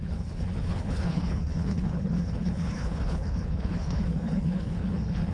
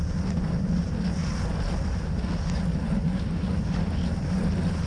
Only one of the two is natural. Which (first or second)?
second